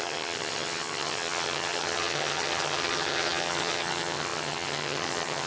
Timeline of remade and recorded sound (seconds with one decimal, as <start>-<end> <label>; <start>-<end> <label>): 0.0-5.5 remade